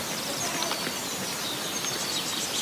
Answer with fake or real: real